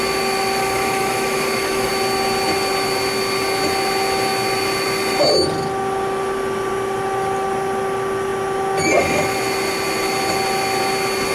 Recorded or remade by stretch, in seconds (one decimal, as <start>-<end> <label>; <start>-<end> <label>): 0.0-0.6 recorded; 0.6-1.9 remade; 1.9-11.3 recorded